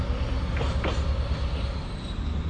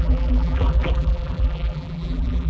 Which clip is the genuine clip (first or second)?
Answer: first